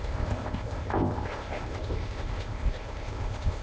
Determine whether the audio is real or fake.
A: fake